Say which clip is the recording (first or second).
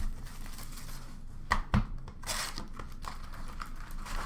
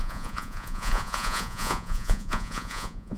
first